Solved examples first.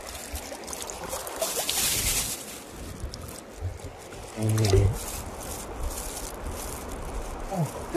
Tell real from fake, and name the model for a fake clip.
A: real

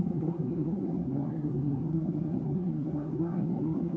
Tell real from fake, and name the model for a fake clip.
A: fake, codec, SNAC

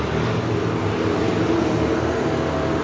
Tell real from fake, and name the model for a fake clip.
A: real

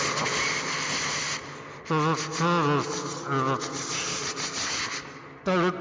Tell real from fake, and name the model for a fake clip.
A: real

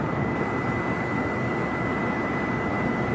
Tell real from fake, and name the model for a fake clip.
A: real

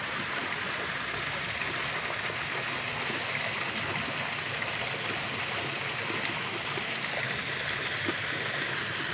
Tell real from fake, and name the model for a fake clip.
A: real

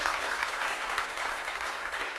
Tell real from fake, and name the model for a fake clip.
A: fake, codec, SNAC